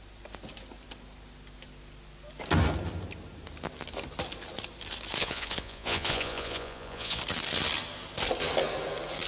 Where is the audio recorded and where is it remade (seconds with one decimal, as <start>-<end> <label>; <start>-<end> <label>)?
0.0-5.2 recorded; 5.2-7.2 remade; 7.2-9.3 recorded